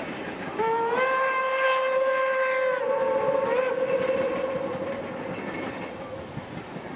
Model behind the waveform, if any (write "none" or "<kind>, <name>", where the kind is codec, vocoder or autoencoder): none